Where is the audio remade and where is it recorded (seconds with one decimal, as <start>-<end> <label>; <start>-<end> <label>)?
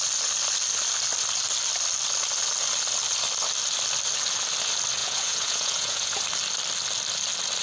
0.0-5.0 recorded; 5.0-6.2 remade; 6.2-7.6 recorded